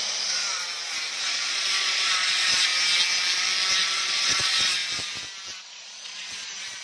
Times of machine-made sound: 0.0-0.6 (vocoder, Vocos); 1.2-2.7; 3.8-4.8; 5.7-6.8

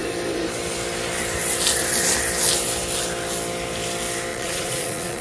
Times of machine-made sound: 4.3-5.2 (vocoder, Vocos)

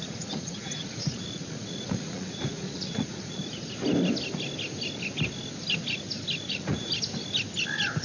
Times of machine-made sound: 0.0-3.4 (vocoder, Vocos); 6.5-6.9

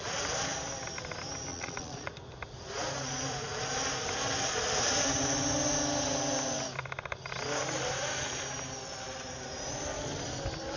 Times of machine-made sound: 1.5-2.1 (vocoder, Vocos)

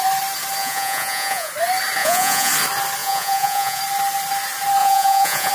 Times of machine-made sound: 0.6-1.5 (vocoder, Vocos); 2.0-2.5; 3.0-3.8; 4.8-5.5

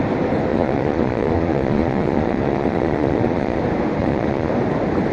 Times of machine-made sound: 0.5-3.6 (vocoder, Vocos); 4.0-4.5

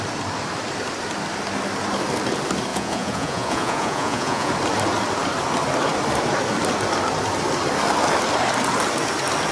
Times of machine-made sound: 2.7-4.5 (vocoder, Vocos)